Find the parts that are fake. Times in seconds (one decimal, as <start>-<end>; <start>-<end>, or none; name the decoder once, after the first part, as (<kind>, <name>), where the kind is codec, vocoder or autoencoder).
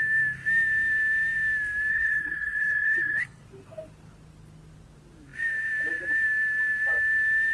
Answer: 1.9-3.4 (codec, HILCodec)